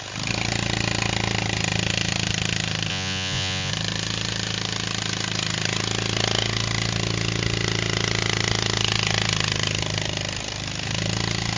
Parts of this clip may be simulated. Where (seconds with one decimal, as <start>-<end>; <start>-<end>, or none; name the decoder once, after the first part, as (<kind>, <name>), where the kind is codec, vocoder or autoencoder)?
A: 2.9-3.7 (vocoder, Vocos)